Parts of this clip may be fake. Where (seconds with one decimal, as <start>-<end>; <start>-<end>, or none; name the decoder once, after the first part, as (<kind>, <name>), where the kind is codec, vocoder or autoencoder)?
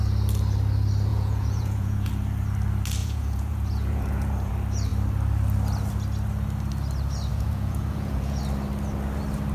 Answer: 1.1-2.1 (vocoder, Vocos); 3.0-4.5; 7.3-8.4